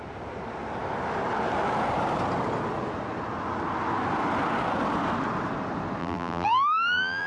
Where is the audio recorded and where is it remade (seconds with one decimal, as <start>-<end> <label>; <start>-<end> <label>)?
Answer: 0.0-6.0 recorded; 6.0-7.3 remade